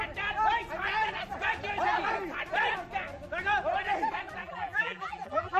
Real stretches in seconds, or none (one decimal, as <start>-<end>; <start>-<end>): 0.0-4.4